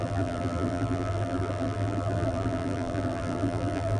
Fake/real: fake